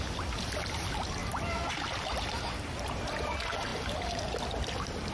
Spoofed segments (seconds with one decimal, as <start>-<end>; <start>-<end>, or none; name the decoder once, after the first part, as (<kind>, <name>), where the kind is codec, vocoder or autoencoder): 1.2-1.7 (vocoder, BigVGAN v2)